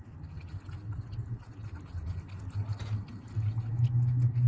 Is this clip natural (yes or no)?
yes